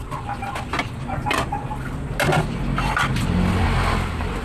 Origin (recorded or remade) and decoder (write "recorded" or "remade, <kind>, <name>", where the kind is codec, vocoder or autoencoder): recorded